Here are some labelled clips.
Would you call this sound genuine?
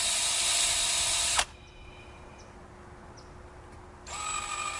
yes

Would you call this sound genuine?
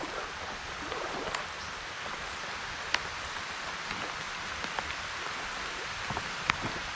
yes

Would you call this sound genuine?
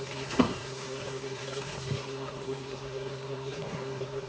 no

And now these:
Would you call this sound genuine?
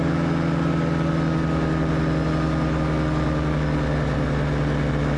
yes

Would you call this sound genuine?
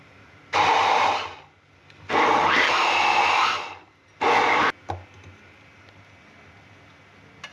yes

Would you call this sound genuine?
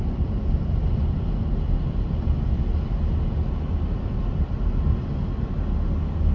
yes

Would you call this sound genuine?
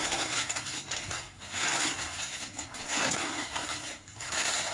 no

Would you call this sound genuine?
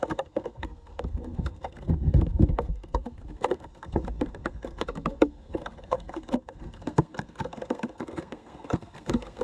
no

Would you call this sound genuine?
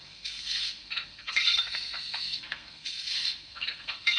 no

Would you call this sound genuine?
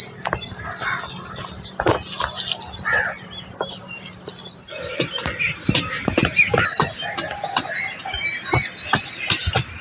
yes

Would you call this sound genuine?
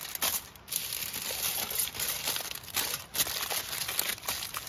yes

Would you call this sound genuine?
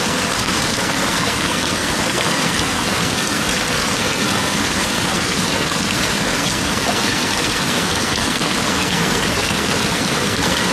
no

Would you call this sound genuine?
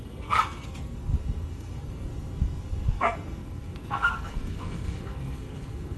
no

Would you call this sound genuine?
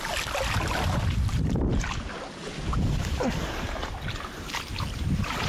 yes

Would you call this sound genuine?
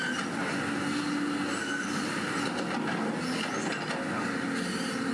yes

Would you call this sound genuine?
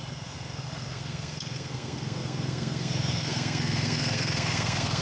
no